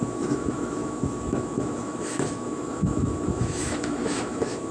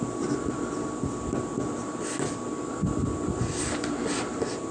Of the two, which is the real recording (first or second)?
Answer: second